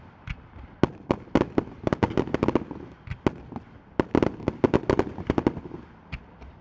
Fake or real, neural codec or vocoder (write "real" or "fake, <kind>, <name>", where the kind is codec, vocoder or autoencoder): real